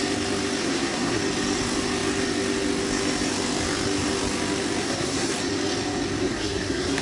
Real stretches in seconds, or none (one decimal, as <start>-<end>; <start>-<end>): 0.0-0.6; 1.2-4.8; 5.3-6.2